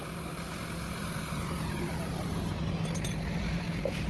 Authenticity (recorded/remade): recorded